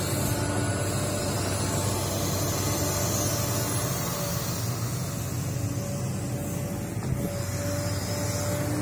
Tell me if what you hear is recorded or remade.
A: recorded